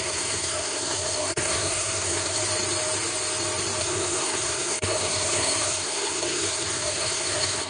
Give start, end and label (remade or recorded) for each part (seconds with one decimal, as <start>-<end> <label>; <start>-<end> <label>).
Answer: 0.0-2.4 remade; 2.4-3.8 recorded; 3.8-7.7 remade